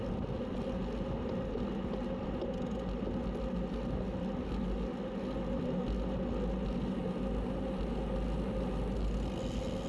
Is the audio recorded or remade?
recorded